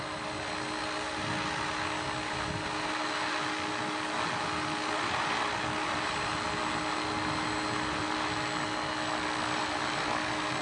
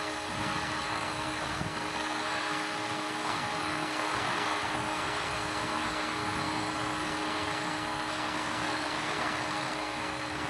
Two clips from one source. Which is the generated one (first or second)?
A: second